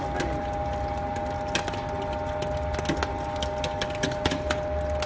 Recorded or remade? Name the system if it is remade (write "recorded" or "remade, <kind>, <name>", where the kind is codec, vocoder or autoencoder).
recorded